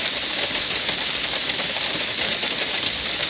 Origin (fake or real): real